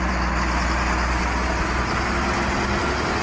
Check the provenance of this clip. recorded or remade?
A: recorded